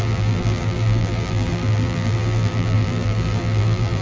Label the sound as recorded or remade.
remade